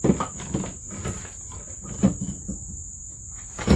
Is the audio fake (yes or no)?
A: no